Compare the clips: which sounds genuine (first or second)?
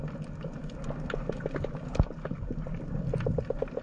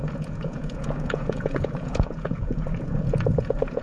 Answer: first